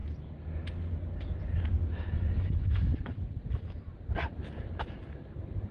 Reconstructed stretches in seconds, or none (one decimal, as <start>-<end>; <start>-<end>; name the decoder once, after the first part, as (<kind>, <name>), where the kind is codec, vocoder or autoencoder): 2.1-2.9 (autoencoder, DAC-VAE); 3.5-3.9